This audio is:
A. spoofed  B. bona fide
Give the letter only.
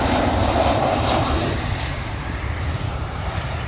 A